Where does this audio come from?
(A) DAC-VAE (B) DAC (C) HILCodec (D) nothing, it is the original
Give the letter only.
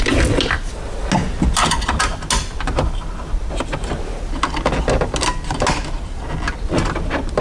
D